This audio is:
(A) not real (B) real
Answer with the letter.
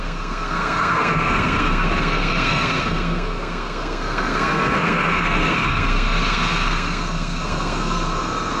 A